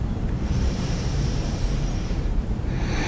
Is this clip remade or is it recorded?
remade